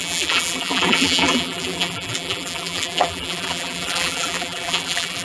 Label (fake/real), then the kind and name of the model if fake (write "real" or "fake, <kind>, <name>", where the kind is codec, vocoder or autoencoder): fake, vocoder, BigVGAN v2